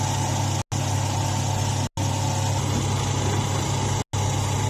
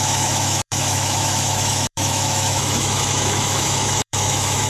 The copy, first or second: second